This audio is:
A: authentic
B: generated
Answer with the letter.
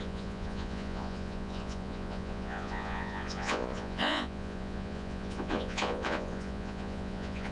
B